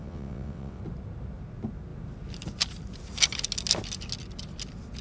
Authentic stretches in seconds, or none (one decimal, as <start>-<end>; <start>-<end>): 0.8-5.0